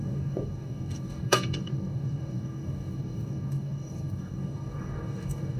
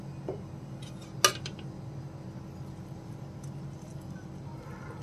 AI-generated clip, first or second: first